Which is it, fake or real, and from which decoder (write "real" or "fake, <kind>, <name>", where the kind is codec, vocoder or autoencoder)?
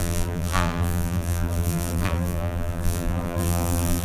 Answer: fake, vocoder, BigVGAN v2